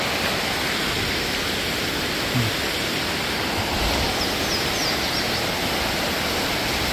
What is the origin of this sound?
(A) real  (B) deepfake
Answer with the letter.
A